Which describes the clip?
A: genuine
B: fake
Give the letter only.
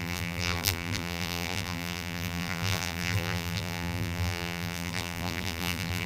B